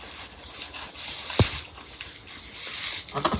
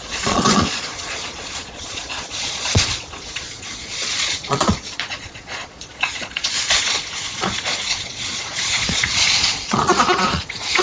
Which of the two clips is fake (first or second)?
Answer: second